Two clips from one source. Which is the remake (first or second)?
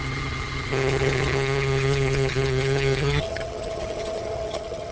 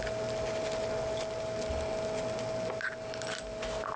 first